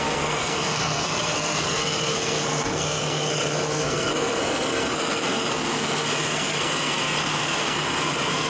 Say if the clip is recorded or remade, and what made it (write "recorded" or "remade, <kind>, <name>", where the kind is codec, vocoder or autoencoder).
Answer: remade, codec, SNAC